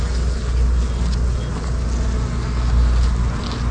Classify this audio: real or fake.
real